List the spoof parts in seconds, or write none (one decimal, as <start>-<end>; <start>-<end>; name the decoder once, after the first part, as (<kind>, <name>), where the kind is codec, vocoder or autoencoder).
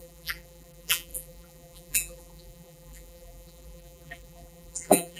0.0-5.2 (vocoder, BigVGAN v2)